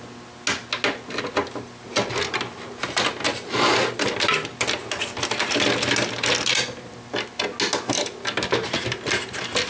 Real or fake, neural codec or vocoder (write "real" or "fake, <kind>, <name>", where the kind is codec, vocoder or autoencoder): real